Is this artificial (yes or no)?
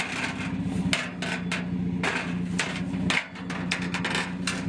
no